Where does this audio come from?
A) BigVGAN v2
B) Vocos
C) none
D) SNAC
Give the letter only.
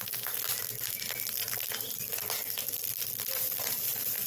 C